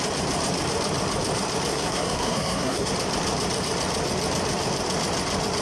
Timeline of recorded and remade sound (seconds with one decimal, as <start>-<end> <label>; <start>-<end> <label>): 0.0-1.7 recorded; 1.7-2.9 remade; 2.9-5.6 recorded